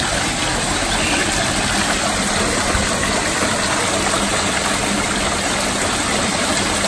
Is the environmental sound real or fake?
real